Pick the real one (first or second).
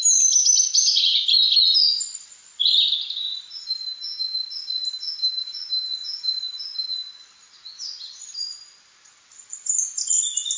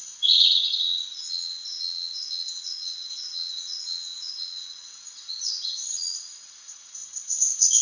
first